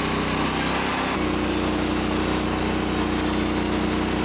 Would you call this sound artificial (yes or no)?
no